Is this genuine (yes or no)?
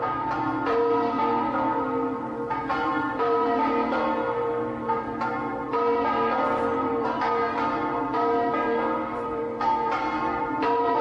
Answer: no